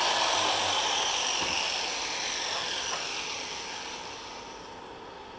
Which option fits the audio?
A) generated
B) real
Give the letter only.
B